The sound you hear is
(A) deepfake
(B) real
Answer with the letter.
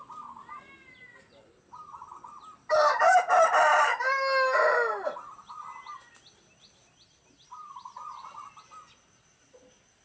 B